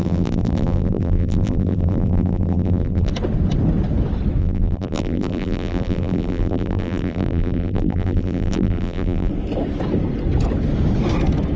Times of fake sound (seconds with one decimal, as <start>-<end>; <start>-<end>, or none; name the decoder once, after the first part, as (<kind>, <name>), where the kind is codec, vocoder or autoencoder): 0.0-3.1 (vocoder, BigVGAN v2); 4.4-9.3